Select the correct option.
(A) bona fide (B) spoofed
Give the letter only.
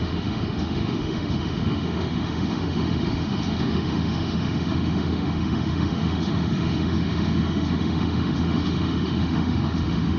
B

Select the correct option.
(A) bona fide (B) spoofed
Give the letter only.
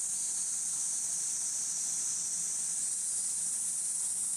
A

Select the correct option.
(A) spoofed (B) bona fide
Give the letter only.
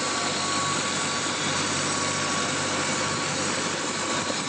B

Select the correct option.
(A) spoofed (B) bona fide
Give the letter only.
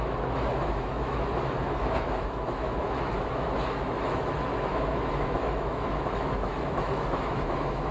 A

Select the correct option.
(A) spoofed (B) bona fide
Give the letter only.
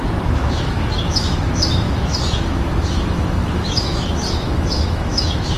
A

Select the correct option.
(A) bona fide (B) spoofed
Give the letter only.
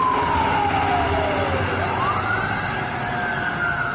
A